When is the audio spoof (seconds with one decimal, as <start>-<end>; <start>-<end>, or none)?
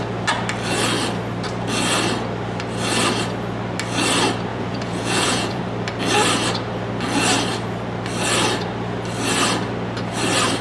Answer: 4.5-5.6